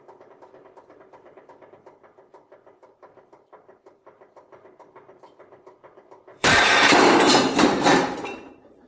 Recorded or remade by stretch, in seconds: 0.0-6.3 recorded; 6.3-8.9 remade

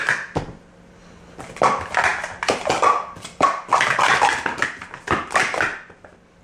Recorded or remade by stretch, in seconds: 0.0-6.4 recorded

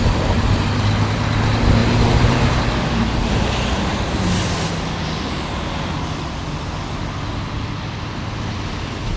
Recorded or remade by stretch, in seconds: 0.0-1.8 recorded; 1.8-3.9 remade; 3.9-9.2 recorded

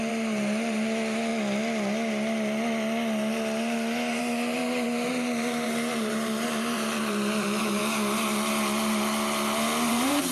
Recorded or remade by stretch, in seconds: 0.0-1.3 remade; 1.3-4.2 recorded; 4.2-7.8 remade; 7.8-9.9 recorded; 9.9-10.3 remade

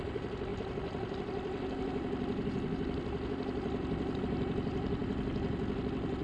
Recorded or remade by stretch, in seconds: 0.0-6.2 remade

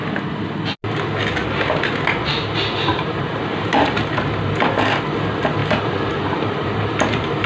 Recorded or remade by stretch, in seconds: 0.0-2.9 recorded; 2.9-4.6 remade; 4.6-5.6 recorded; 5.6-7.5 remade

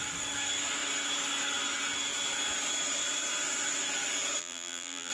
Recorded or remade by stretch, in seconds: 0.0-4.4 recorded; 4.4-5.1 remade

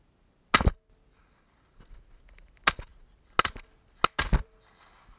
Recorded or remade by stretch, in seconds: 0.0-5.2 recorded